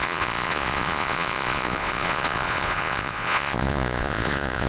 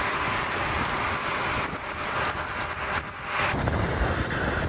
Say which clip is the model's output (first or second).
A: first